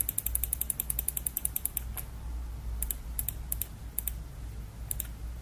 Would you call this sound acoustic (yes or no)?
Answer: yes